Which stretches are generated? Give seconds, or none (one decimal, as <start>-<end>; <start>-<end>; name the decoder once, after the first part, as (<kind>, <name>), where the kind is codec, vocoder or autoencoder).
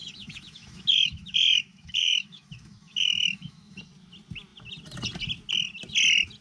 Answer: 0.0-3.8 (autoencoder, DAC-VAE)